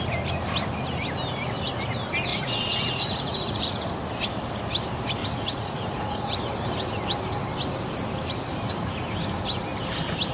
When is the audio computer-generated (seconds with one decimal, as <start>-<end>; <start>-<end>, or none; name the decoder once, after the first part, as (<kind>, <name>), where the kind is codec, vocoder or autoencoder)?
2.3-3.9 (vocoder, Vocos); 5.2-6.4